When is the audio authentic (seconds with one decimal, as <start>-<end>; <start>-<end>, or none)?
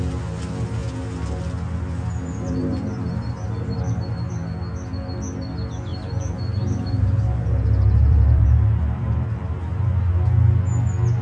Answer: 0.0-2.7; 4.3-5.9; 10.0-11.2